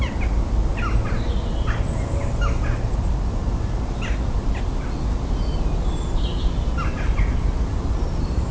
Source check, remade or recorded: recorded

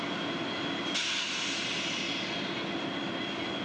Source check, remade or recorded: recorded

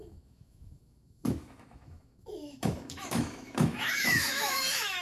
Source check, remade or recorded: remade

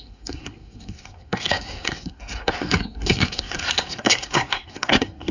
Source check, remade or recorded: remade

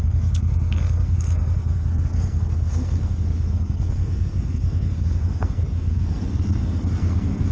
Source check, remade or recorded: remade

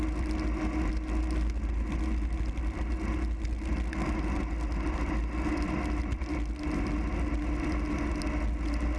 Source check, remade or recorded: recorded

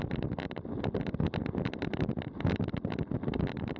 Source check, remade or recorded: recorded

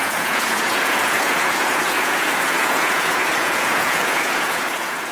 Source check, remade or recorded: remade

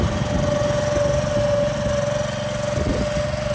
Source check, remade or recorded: recorded